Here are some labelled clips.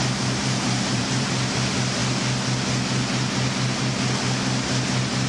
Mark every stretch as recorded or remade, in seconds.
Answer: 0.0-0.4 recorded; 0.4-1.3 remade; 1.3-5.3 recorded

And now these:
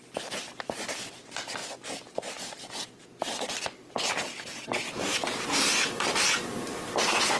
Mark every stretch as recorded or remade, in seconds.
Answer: 0.0-7.4 recorded

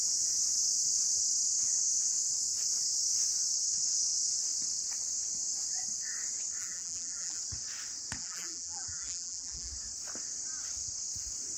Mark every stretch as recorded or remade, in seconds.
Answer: 0.0-6.6 recorded; 6.6-7.4 remade; 7.4-8.2 recorded; 8.2-9.7 remade; 9.7-11.6 recorded